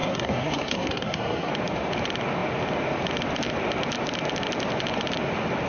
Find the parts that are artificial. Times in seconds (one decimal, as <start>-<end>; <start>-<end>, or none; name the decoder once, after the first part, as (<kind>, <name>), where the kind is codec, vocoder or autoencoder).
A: 0.0-1.5 (codec, SNAC)